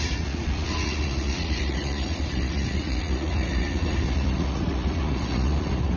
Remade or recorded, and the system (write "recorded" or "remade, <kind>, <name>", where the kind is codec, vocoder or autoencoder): remade, vocoder, Vocos